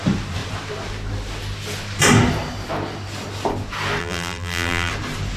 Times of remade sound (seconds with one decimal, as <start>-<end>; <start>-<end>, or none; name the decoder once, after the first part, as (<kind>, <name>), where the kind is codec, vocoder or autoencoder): 4.0-4.9 (vocoder, BigVGAN v2)